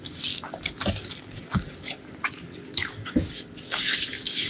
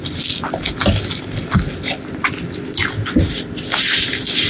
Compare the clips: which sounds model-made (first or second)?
first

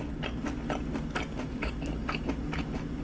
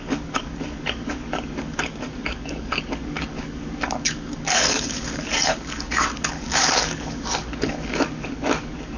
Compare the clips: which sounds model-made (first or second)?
second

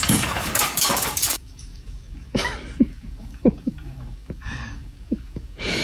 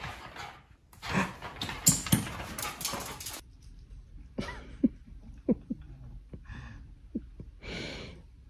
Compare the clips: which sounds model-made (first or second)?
first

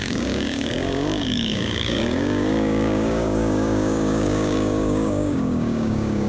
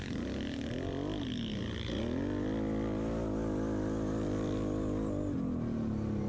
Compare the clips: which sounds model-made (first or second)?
first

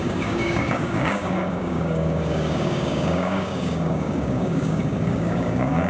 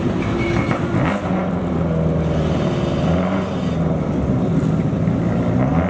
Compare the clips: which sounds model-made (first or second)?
first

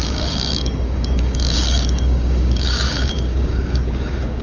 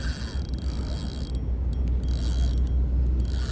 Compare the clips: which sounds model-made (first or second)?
first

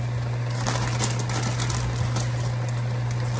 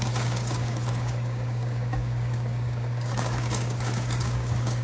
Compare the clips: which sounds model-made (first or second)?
second